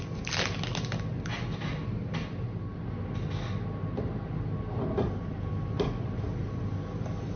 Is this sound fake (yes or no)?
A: no